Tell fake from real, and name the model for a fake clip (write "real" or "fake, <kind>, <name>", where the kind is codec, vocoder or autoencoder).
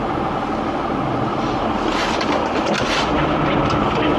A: real